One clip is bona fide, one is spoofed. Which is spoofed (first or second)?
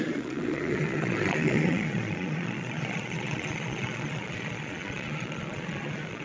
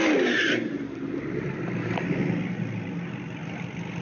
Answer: first